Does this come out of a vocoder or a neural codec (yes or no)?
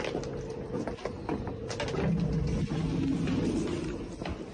no